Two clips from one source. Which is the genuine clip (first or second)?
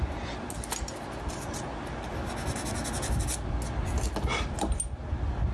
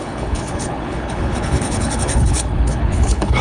first